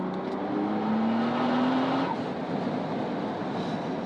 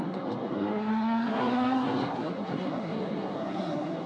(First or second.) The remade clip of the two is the second